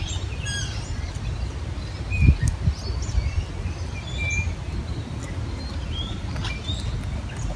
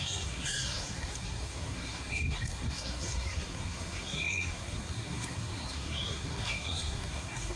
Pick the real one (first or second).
first